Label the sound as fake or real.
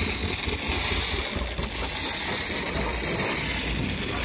real